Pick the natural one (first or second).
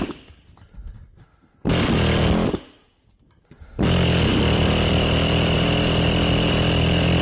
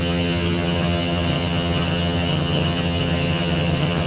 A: first